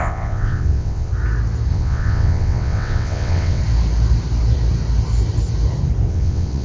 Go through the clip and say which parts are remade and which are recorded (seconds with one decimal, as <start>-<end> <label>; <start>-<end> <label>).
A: 0.0-1.1 remade; 1.1-1.7 recorded; 1.7-3.6 remade; 3.6-6.1 recorded; 6.1-6.6 remade